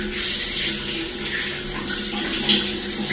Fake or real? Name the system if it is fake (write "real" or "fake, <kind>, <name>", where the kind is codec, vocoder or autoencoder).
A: real